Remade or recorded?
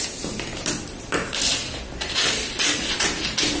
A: recorded